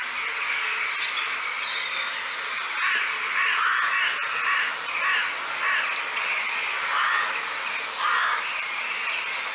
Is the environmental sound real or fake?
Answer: real